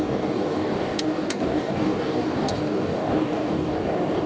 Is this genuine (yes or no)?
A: no